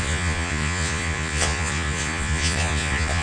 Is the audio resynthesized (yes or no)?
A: yes